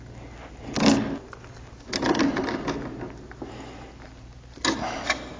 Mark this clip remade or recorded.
recorded